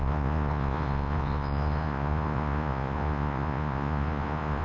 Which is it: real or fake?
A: fake